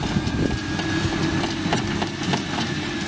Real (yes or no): yes